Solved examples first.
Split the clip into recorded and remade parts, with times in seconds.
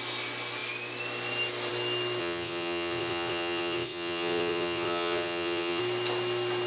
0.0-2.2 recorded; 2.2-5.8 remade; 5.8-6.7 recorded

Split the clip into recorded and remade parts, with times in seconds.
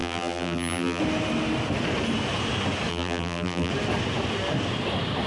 0.0-1.0 remade; 1.0-2.9 recorded; 2.9-3.7 remade; 3.7-5.3 recorded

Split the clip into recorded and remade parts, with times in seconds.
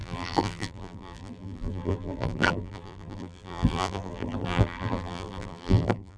0.0-6.2 remade